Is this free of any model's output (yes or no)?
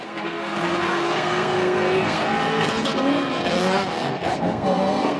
no